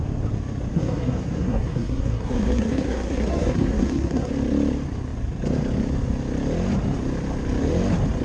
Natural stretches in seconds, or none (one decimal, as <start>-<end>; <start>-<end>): 0.0-0.7; 4.3-8.2